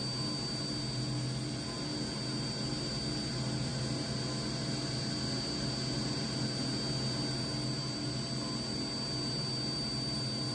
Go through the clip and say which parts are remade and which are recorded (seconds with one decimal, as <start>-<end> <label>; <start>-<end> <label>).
0.0-10.5 recorded